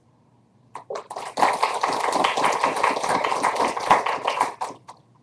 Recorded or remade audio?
recorded